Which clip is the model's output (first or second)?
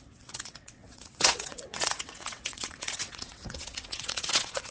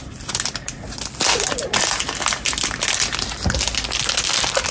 first